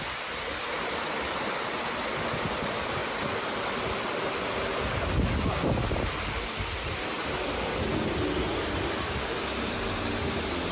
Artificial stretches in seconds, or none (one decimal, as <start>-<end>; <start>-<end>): none

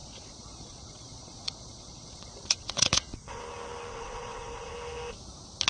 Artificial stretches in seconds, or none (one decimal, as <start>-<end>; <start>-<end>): 0.0-3.4; 3.9-4.7